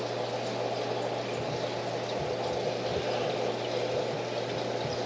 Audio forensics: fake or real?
real